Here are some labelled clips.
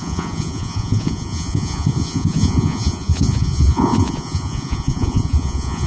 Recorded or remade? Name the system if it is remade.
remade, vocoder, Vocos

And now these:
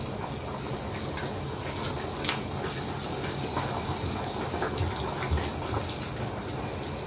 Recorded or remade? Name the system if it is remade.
recorded